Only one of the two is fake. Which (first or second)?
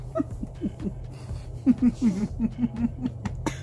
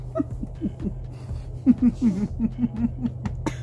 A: first